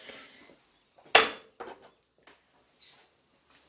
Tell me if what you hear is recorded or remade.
recorded